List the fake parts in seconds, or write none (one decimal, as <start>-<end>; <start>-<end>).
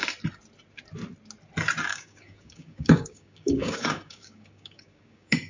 1.9-5.5